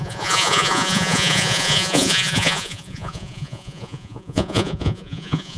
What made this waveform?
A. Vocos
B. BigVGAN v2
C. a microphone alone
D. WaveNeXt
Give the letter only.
A